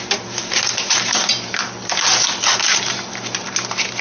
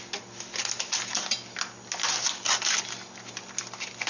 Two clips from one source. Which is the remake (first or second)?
first